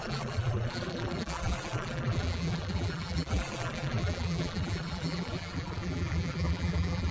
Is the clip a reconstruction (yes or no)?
yes